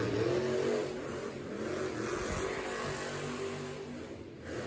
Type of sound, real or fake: real